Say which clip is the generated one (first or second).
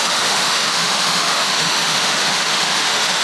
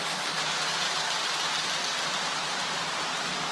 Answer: first